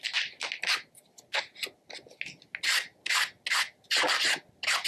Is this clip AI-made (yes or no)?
no